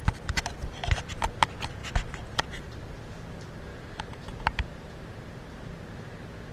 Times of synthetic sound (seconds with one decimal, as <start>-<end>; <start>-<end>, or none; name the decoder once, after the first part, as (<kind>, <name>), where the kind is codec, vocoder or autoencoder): 0.8-1.3 (vocoder, BigVGAN v2); 3.7-5.0